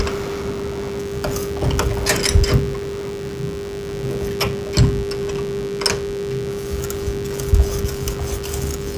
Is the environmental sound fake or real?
real